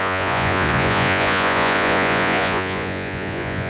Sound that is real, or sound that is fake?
fake